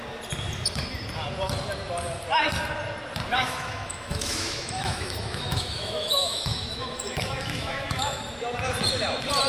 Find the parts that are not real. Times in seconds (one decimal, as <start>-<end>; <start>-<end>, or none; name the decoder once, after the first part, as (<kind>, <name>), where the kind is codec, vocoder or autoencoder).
3.3-8.2 (autoencoder, DAC-VAE)